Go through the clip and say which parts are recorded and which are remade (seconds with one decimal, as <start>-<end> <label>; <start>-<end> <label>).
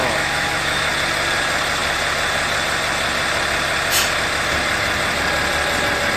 0.0-0.9 remade; 0.9-6.2 recorded